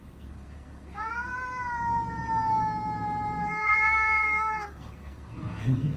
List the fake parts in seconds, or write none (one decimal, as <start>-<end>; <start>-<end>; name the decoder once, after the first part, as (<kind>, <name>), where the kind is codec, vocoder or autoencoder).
0.0-1.3 (codec, SNAC); 3.5-6.0